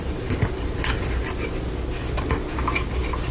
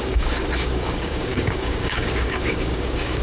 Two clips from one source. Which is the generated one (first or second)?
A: second